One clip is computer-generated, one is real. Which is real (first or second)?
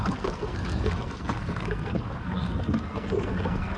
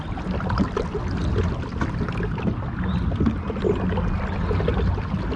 second